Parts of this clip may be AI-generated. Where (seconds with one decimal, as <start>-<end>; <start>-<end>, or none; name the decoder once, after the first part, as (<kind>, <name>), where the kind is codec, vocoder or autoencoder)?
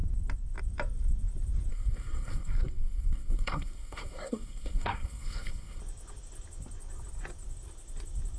1.7-5.8 (codec, SNAC)